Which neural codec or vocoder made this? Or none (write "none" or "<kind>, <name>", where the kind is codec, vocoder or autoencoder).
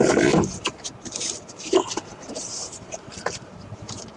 vocoder, BigVGAN v2